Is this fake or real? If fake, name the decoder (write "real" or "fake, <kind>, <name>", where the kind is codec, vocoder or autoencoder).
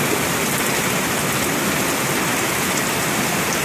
real